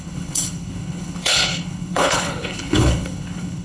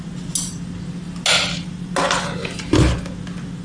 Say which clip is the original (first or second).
second